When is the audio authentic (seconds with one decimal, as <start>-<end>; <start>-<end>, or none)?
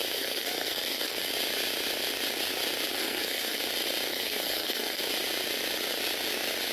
1.3-2.9; 3.6-4.1; 5.0-6.7